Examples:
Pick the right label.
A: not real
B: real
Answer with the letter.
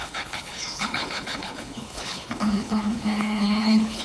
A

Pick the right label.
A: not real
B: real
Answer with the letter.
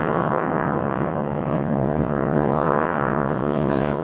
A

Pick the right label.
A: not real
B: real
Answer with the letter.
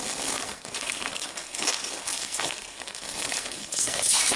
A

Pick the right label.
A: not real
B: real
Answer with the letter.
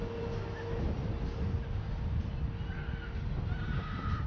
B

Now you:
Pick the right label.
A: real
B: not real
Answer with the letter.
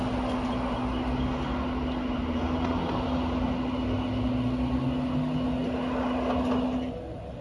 A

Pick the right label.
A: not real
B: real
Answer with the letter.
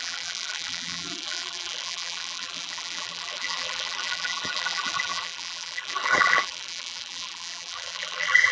A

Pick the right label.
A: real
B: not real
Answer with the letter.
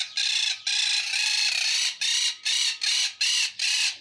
B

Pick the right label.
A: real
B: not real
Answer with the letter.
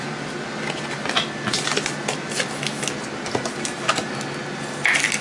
A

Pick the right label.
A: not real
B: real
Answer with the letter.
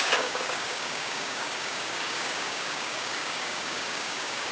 A